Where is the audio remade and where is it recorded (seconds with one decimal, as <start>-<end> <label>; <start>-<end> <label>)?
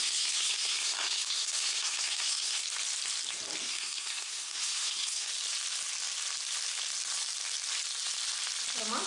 0.0-2.6 remade; 2.6-3.6 recorded; 3.6-5.3 remade; 5.3-9.1 recorded